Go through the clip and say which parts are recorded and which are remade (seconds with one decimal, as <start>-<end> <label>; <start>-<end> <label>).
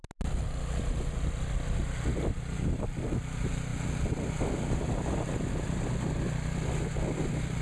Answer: 0.0-7.6 recorded